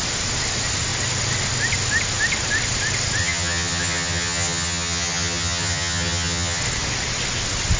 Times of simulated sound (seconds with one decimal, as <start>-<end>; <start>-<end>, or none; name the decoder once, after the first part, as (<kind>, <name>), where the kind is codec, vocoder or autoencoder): 3.2-6.6 (vocoder, HiFi-GAN)